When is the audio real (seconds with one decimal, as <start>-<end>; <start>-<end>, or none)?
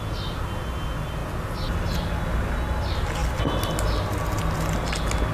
0.0-5.3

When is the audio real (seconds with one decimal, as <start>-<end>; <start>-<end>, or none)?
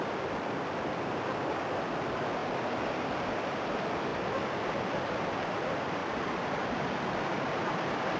2.4-3.1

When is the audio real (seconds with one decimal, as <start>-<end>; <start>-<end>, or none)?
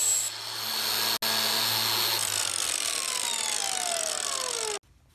0.9-5.1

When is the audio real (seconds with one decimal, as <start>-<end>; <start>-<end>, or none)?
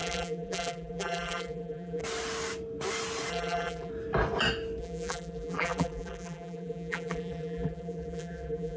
2.0-3.3; 3.9-4.8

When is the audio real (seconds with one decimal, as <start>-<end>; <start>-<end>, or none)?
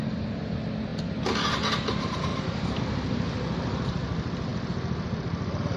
0.0-2.3; 2.8-5.8